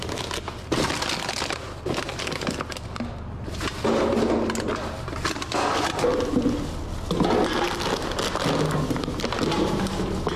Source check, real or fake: real